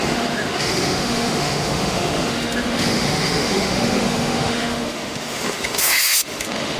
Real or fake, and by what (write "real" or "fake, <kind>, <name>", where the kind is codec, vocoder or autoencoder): fake, autoencoder, DAC-VAE